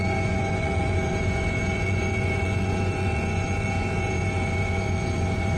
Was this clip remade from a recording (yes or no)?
yes